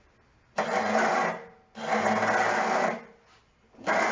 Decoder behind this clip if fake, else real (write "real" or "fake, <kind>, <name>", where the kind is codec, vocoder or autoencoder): real